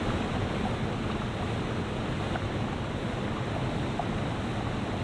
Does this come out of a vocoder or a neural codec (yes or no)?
no